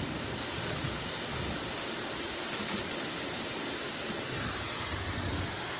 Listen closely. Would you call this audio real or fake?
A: real